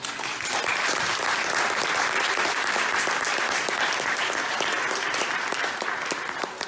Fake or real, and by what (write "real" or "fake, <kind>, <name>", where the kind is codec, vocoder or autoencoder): real